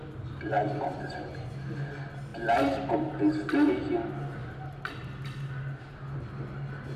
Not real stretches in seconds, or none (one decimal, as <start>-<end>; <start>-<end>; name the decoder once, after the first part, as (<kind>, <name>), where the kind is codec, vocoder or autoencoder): none